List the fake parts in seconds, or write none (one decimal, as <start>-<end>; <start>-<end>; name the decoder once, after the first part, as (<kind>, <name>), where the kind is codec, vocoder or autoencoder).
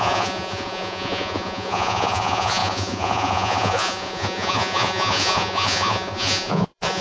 0.0-7.0 (vocoder, Vocos)